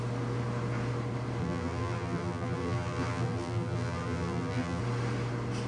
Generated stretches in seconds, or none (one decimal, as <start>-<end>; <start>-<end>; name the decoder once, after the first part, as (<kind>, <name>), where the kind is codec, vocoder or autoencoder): 1.4-4.8 (vocoder, BigVGAN v2)